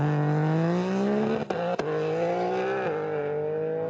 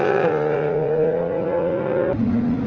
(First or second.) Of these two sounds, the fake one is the second